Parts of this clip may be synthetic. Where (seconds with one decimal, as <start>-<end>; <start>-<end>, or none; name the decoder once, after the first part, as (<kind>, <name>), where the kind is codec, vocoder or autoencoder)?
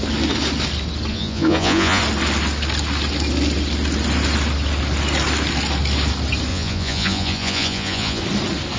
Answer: 1.1-2.0 (vocoder, Vocos); 6.5-8.2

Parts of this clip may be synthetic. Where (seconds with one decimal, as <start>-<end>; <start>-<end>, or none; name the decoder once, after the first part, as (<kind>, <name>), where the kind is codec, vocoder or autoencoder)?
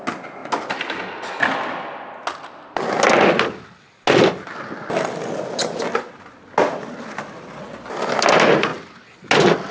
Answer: none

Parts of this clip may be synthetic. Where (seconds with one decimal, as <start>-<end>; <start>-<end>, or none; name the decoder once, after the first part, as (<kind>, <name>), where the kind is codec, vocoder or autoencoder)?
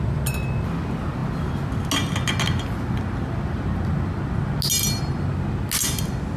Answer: none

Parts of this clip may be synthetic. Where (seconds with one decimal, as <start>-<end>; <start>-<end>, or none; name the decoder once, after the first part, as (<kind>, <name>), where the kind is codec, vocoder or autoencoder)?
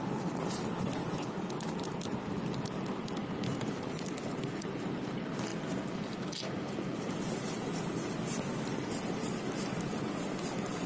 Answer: none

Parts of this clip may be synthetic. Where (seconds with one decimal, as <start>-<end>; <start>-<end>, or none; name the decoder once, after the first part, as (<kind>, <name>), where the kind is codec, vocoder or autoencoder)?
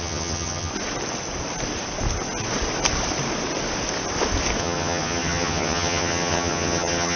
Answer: 0.0-0.7 (vocoder, HiFi-GAN); 4.6-7.2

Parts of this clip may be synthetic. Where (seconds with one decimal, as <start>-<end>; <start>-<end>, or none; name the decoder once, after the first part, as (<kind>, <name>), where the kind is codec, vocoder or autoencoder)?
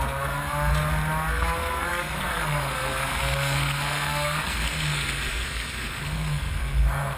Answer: 0.0-0.7 (codec, SNAC); 1.3-7.2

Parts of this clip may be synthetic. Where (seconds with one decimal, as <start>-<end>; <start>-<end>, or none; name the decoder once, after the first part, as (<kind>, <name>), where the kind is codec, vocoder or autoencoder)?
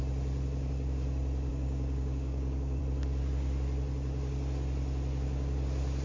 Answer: 1.5-2.8 (codec, DAC)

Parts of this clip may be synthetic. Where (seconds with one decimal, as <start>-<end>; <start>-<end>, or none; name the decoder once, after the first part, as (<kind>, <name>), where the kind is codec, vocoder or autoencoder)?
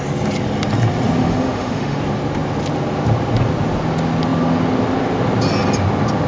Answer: 1.2-2.0 (autoencoder, DAC-VAE)